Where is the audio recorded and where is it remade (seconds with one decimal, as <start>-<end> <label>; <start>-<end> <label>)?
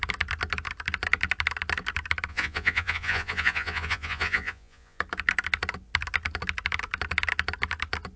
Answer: 0.0-2.3 recorded; 2.3-5.0 remade; 5.0-8.2 recorded